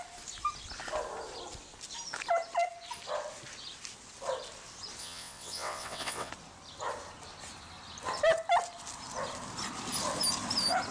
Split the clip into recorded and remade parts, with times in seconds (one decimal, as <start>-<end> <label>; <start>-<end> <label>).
0.0-5.0 recorded; 5.0-6.3 remade; 6.3-10.9 recorded